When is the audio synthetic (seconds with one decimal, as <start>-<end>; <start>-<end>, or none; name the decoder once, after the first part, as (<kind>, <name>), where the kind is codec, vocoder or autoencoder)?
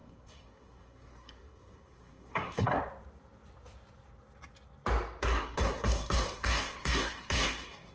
0.0-2.8 (codec, SNAC); 5.2-7.9